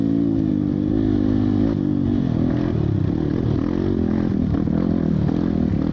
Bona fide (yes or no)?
yes